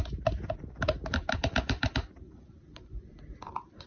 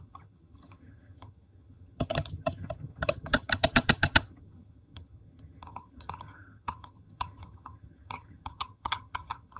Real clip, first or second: first